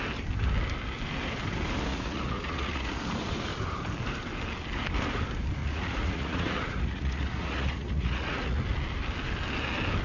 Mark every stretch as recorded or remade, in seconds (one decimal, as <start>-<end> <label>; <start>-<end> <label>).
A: 0.0-1.9 recorded; 1.9-3.0 remade; 3.0-5.6 recorded; 5.6-8.6 remade; 8.6-10.0 recorded